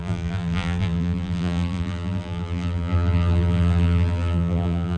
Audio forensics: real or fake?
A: fake